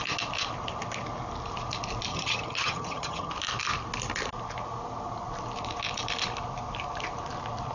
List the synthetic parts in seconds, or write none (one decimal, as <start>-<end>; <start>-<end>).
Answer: 2.1-3.3